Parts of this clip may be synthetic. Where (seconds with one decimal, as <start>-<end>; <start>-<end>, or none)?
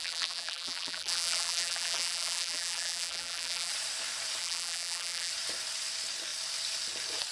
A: 0.0-3.7; 4.4-5.3